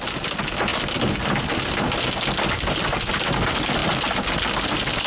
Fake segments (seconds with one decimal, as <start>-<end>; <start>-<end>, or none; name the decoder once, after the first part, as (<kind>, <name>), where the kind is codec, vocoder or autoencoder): none

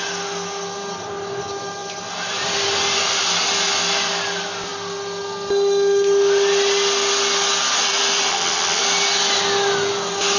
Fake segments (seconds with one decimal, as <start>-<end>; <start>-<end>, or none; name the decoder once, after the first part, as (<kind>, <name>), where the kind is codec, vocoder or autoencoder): 8.3-8.8 (vocoder, HiFi-GAN)

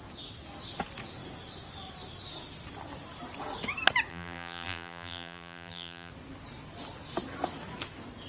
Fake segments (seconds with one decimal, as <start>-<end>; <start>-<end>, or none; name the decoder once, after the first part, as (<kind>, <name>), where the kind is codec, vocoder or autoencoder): 4.1-6.1 (vocoder, BigVGAN v2)

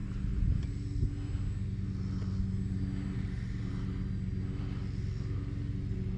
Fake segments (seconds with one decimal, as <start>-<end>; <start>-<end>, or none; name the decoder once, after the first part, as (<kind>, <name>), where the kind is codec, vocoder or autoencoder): none